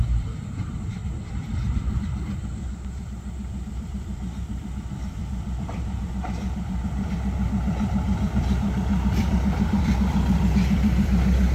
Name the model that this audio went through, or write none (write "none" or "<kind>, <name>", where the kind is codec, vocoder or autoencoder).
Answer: vocoder, BigVGAN v2